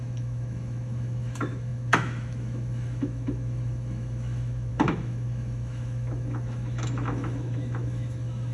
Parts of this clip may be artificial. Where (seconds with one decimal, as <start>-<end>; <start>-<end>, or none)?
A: 0.0-8.5